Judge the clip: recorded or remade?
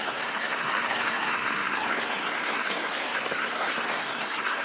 remade